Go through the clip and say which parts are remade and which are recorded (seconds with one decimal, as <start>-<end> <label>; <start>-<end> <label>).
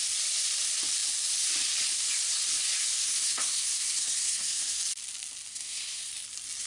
0.0-3.0 recorded; 3.0-4.8 remade; 4.8-5.5 recorded; 5.5-6.1 remade; 6.1-6.7 recorded